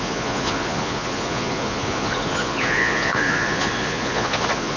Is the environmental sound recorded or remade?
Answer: remade